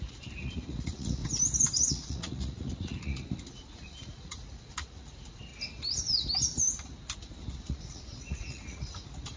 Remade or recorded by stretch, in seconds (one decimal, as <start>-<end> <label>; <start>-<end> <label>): 0.0-1.2 remade; 1.2-1.8 recorded; 1.8-5.5 remade; 5.5-7.6 recorded; 7.6-9.4 remade